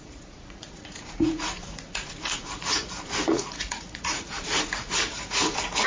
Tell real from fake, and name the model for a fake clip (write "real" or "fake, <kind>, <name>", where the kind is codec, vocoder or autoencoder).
fake, vocoder, Vocos